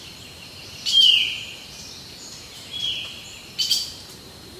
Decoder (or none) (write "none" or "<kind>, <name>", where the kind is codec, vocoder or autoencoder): vocoder, BigVGAN v2